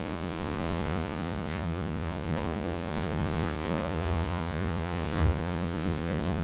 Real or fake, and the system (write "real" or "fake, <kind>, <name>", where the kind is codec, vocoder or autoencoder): fake, vocoder, Vocos